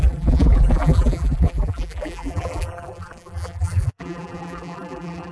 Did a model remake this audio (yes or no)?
yes